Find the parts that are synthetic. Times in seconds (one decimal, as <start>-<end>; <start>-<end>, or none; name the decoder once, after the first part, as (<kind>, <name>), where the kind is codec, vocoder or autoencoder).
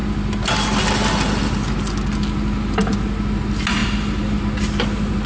none